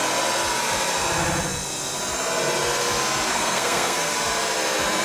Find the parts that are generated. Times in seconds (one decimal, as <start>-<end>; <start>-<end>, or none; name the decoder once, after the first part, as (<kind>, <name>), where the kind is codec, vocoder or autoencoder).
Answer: 3.3-4.1 (codec, SNAC)